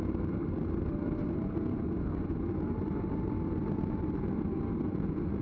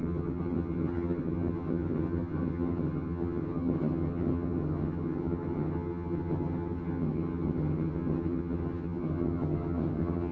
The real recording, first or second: first